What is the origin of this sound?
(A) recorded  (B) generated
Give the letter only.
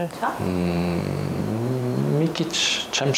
B